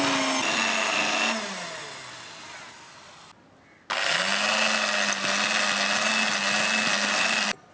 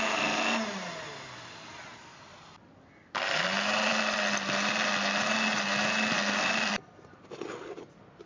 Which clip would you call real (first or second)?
first